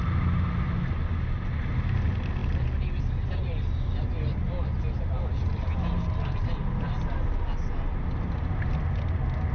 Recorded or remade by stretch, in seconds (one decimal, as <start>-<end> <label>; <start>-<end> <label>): 0.0-9.5 recorded